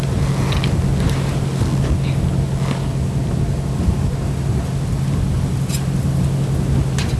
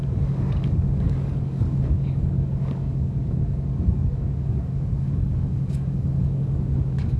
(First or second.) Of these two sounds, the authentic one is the first